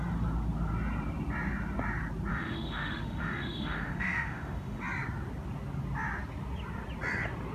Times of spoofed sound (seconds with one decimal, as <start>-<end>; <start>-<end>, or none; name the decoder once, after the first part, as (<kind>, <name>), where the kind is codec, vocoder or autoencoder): 2.3-4.8 (autoencoder, DAC-VAE)